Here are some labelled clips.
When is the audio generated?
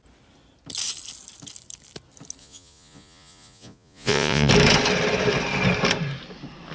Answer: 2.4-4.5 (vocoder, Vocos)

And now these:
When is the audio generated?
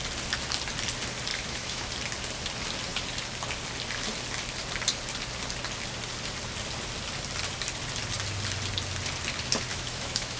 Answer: 1.3-1.9 (autoencoder, DAC-VAE); 9.7-10.4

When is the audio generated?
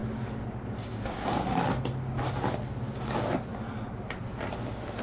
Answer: none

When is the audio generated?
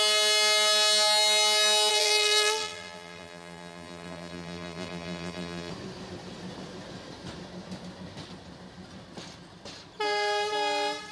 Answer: 1.9-5.7 (vocoder, BigVGAN v2)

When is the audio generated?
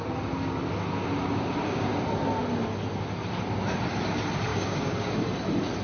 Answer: 1.2-2.0 (codec, DAC); 4.5-5.2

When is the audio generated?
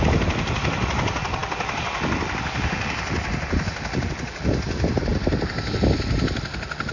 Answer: none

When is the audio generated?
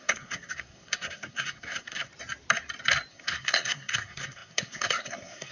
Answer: 0.0-2.1 (codec, SNAC); 3.1-5.5